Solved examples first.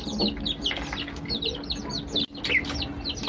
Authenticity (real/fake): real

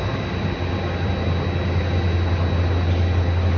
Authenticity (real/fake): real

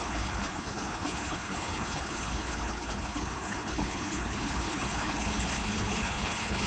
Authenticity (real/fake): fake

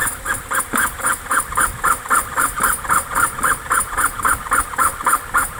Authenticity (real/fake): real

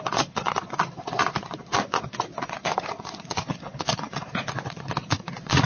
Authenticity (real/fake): fake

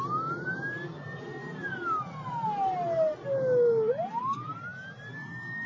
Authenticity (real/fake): real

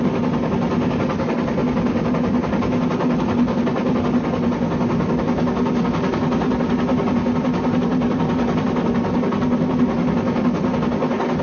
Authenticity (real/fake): real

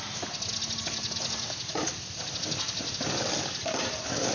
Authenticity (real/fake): real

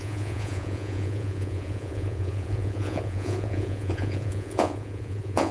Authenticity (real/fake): fake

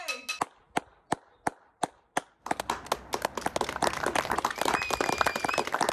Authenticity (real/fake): real